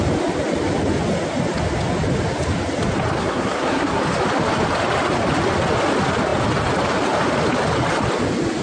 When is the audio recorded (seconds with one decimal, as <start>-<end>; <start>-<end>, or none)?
0.0-3.2; 4.0-8.6